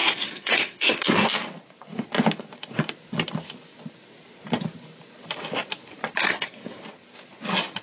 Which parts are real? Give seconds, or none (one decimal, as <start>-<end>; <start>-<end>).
1.3-6.2; 6.8-7.8